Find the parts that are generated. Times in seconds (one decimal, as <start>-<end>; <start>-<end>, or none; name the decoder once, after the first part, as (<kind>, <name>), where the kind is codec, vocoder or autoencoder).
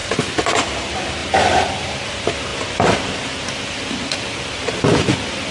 1.2-2.1 (vocoder, BigVGAN v2); 2.5-3.9